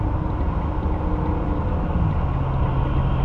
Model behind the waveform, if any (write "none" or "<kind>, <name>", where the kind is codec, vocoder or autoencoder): none